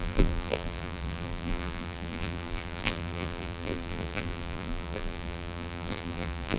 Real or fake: fake